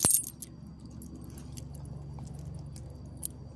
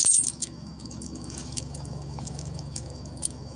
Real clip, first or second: first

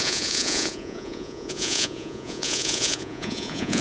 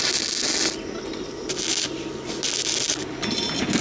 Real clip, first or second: second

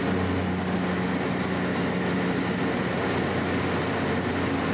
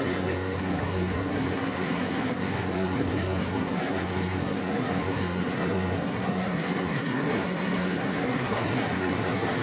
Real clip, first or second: first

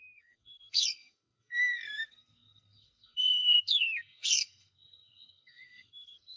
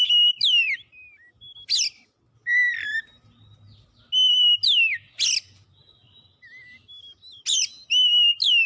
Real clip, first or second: second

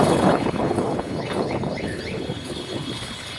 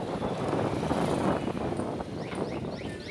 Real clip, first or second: second